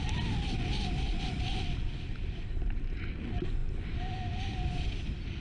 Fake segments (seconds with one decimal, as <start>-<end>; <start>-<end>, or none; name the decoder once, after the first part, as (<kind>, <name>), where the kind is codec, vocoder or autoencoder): none